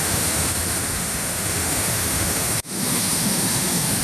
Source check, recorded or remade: remade